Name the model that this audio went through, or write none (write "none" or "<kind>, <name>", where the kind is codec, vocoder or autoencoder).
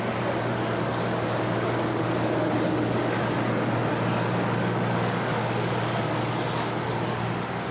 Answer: codec, DAC